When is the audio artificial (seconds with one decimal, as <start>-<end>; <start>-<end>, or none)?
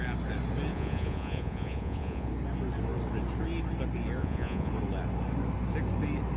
0.7-2.3; 4.2-4.7